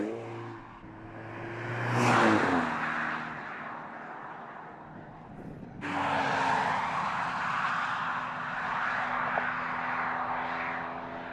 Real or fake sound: real